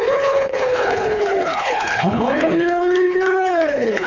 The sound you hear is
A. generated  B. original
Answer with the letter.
A